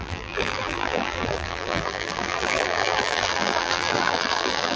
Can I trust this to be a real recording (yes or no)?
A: no